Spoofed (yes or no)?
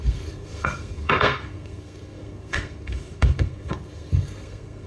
yes